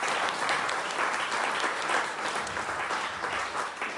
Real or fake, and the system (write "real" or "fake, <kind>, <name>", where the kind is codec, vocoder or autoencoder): real